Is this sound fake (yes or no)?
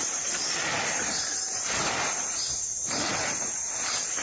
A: no